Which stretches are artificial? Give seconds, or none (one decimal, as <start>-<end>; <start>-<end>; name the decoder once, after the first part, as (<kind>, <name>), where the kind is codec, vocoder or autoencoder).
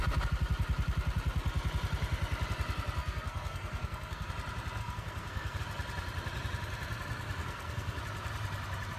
3.0-4.3 (codec, SNAC); 4.8-5.6; 7.4-8.0